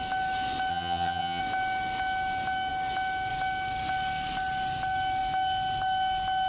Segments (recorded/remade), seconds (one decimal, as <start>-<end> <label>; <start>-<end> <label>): 0.0-0.7 recorded; 0.7-1.4 remade; 1.4-6.5 recorded